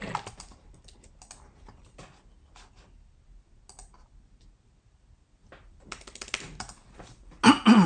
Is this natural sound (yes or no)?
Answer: yes